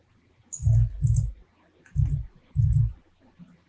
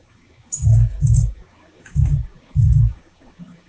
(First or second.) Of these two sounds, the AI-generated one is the second